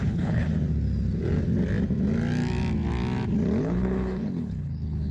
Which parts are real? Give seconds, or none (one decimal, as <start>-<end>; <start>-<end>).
0.5-3.6